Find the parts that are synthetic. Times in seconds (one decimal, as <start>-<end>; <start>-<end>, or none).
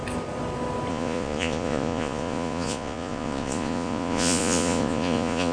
0.9-5.5